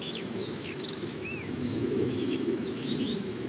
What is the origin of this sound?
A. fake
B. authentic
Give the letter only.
A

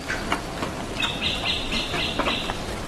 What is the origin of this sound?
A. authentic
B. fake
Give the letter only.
A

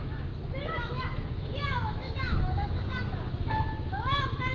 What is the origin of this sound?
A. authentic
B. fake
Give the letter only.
B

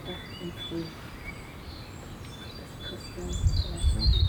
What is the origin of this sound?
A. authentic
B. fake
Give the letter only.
A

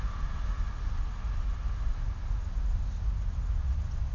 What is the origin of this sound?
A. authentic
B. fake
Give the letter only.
A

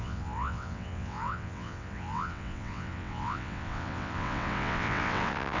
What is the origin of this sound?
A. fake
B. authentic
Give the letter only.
A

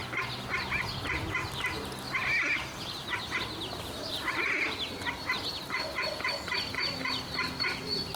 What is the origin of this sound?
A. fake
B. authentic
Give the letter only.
B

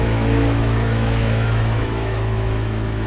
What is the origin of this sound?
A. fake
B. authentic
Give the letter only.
A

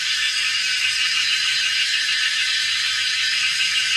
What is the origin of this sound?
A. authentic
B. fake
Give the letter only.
B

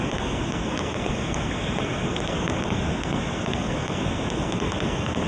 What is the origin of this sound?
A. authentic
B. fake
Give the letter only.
B